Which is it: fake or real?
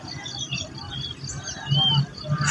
real